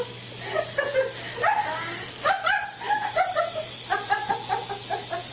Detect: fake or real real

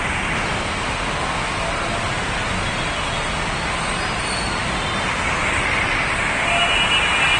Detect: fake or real real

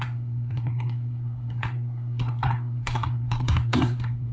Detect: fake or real fake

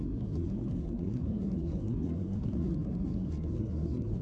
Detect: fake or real fake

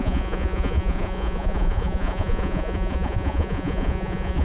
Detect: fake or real fake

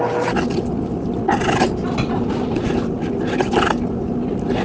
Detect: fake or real real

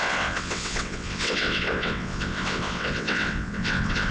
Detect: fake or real fake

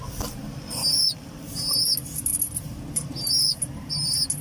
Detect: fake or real real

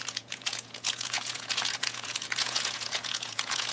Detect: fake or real fake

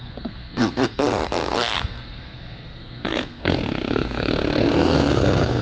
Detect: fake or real fake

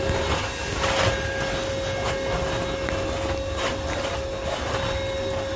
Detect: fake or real real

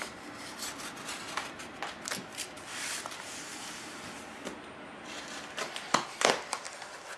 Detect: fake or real real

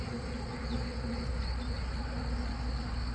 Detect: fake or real real